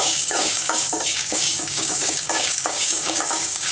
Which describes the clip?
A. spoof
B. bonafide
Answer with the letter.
A